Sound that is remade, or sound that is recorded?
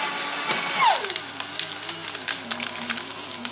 recorded